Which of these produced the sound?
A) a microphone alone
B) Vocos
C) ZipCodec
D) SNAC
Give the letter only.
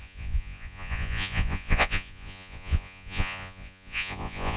B